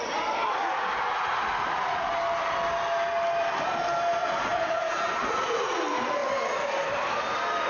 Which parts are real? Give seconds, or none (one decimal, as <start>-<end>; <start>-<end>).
0.0-1.3; 2.1-4.2; 5.8-7.7